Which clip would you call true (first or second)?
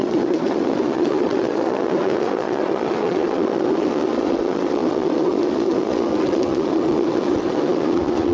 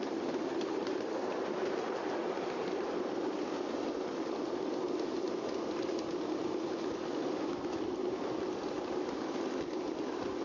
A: second